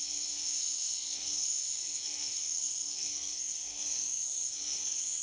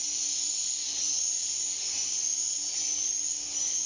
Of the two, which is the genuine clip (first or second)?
second